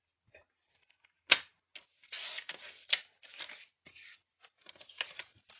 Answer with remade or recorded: recorded